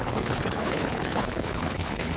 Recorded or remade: remade